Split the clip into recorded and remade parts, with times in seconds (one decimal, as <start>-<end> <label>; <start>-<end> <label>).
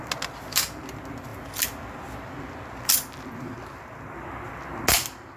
0.0-5.4 recorded